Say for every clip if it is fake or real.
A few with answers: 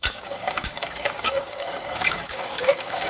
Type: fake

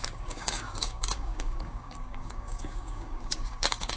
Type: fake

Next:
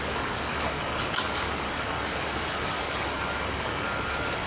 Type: fake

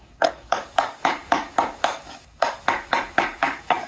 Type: fake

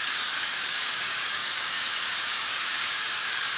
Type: fake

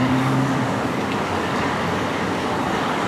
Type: fake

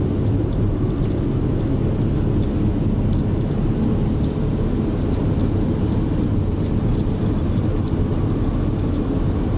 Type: real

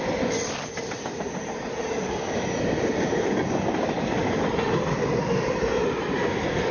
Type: real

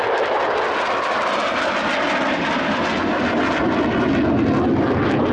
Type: real